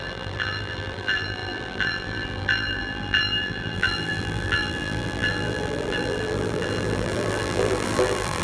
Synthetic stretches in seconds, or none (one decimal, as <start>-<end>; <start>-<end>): 0.0-8.4

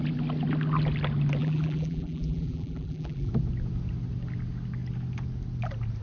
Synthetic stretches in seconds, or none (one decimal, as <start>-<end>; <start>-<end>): 1.4-3.3